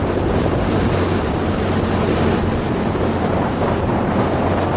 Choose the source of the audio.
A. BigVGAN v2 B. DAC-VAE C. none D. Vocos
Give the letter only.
A